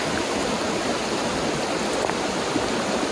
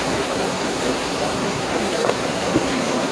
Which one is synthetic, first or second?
second